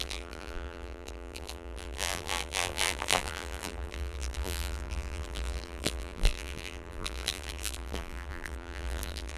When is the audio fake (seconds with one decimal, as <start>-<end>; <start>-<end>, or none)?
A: 0.0-9.4